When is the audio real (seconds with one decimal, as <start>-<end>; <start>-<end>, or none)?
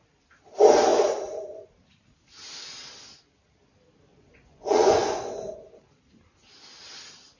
0.0-4.1; 5.4-7.4